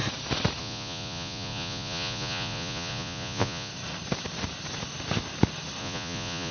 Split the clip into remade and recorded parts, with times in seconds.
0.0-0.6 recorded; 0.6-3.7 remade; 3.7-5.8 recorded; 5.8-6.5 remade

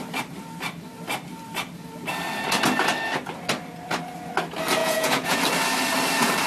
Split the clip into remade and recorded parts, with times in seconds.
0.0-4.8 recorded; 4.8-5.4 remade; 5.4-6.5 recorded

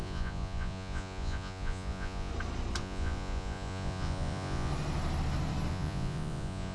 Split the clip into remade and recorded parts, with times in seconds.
0.0-2.3 remade; 2.3-2.8 recorded; 2.8-4.7 remade; 4.7-5.7 recorded; 5.7-6.7 remade

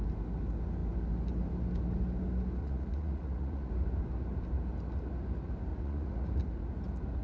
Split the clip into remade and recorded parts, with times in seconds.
0.0-2.6 recorded; 2.6-3.7 remade; 3.7-5.7 recorded; 5.7-6.3 remade; 6.3-7.2 recorded

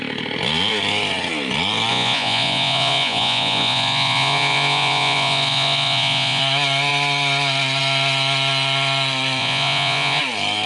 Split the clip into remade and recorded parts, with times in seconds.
0.0-1.9 recorded; 1.9-6.4 remade; 6.4-9.4 recorded; 9.4-10.2 remade; 10.2-10.7 recorded

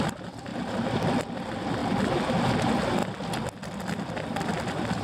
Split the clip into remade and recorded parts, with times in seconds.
0.0-5.0 recorded

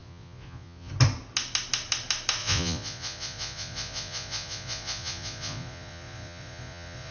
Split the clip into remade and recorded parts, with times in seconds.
0.0-0.9 remade; 0.9-2.4 recorded; 2.4-7.1 remade

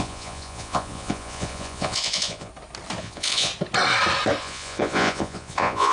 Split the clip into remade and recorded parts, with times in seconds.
0.0-2.5 remade; 2.5-3.0 recorded; 3.0-3.5 remade; 3.5-4.4 recorded; 4.4-5.9 remade